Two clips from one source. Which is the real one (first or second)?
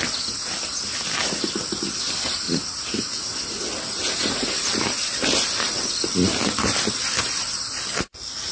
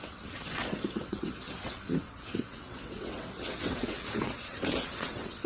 first